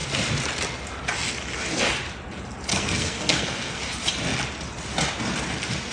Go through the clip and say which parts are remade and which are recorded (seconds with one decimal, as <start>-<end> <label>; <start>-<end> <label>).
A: 0.0-2.7 recorded; 2.7-3.8 remade; 3.8-5.9 recorded